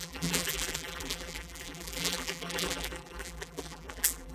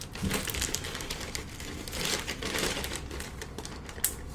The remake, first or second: first